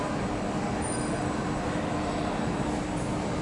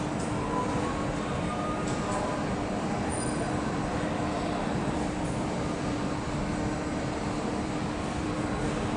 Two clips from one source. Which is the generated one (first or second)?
second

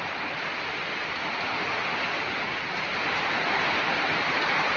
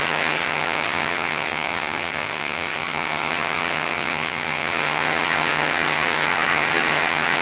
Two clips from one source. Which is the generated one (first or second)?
second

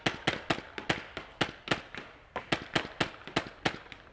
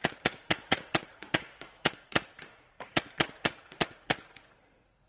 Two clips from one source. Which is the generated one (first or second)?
second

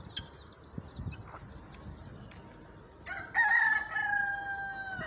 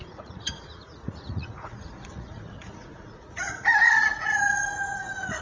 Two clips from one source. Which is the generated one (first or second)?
second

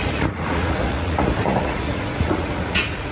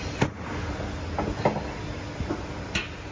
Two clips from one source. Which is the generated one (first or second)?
first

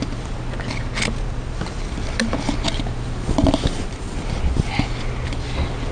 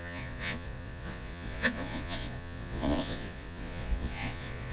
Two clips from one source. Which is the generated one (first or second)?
second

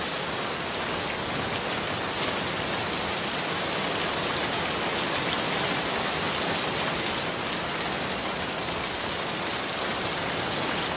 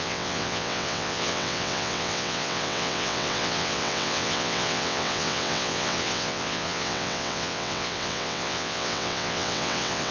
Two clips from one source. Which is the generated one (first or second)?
second